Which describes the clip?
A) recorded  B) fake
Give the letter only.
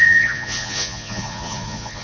B